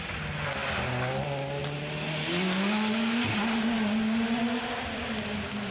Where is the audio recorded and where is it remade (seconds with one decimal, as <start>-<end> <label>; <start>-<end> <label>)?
0.0-5.7 recorded